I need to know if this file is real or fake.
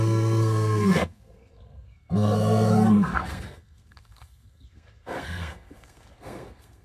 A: fake